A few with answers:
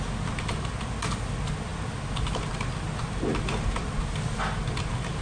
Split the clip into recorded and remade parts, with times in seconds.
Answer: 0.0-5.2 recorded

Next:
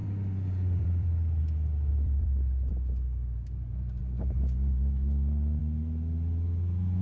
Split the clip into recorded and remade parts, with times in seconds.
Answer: 0.0-1.4 remade; 1.4-1.9 recorded; 1.9-2.7 remade; 2.7-7.0 recorded

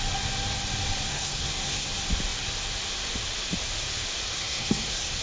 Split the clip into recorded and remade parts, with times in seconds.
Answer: 0.0-1.1 recorded; 1.1-1.9 remade; 1.9-4.3 recorded; 4.3-5.2 remade

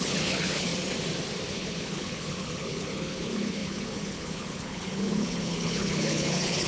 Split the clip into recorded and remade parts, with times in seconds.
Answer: 0.0-0.7 remade; 0.7-1.5 recorded; 1.5-6.7 remade

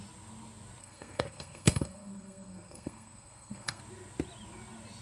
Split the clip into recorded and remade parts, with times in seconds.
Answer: 0.0-0.8 recorded; 0.8-3.8 remade; 3.8-5.0 recorded

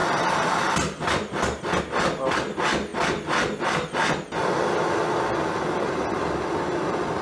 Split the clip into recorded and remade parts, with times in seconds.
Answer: 0.0-1.8 remade; 1.8-7.2 recorded

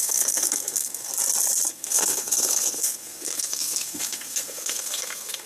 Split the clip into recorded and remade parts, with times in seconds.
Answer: 0.0-1.1 remade; 1.1-1.7 recorded; 1.7-5.5 remade